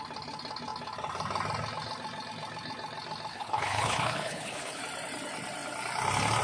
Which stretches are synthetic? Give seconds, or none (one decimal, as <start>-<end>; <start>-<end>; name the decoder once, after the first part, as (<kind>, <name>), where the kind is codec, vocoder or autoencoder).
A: 3.3-4.8 (codec, HILCodec)